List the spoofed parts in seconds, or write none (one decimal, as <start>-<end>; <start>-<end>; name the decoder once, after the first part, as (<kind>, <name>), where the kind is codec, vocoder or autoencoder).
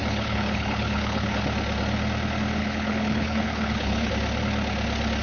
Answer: 0.0-1.4 (codec, HILCodec); 2.6-4.1